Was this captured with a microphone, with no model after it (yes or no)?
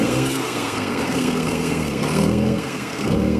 no